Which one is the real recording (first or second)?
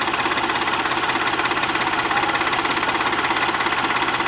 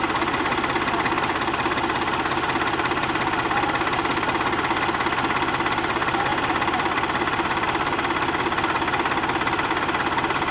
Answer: first